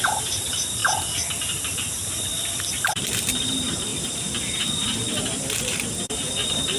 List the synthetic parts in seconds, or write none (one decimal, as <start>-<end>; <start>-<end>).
0.0-0.8; 2.6-6.8